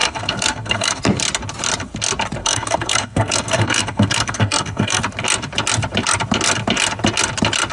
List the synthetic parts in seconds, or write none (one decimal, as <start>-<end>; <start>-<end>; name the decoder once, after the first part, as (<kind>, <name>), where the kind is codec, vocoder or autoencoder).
0.0-1.0 (codec, SNAC); 2.4-5.0